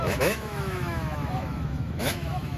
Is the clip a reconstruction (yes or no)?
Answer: yes